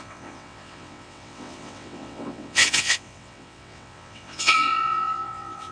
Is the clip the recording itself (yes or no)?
no